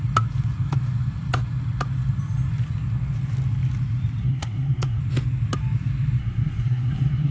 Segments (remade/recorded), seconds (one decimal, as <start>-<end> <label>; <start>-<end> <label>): 0.0-4.2 recorded; 4.2-5.0 remade; 5.0-6.2 recorded; 6.2-7.3 remade